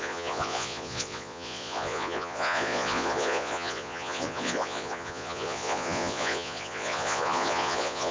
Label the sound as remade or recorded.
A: remade